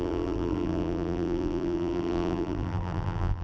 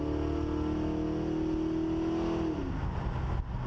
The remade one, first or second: first